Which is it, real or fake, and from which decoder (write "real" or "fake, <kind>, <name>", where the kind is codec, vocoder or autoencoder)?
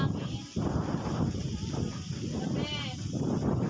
real